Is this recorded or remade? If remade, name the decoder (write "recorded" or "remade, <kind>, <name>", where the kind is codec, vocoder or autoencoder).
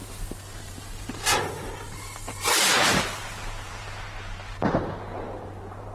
remade, vocoder, BigVGAN v2